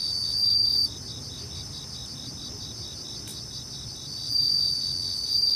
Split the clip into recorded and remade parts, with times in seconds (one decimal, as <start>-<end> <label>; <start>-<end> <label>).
0.0-3.3 remade; 3.3-4.7 recorded; 4.7-5.6 remade